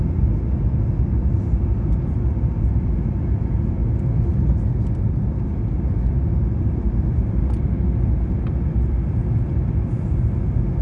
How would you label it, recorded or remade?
recorded